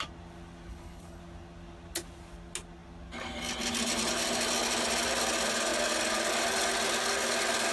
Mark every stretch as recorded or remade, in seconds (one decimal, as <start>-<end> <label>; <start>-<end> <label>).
0.0-0.7 recorded; 0.7-1.2 remade; 1.2-7.7 recorded

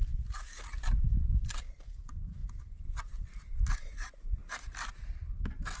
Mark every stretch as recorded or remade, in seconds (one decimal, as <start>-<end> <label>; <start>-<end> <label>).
0.0-5.8 recorded

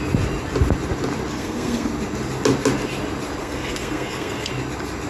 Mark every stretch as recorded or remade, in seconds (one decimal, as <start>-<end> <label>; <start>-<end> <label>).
0.0-1.3 recorded; 1.3-1.9 remade; 1.9-3.4 recorded; 3.4-4.5 remade; 4.5-5.1 recorded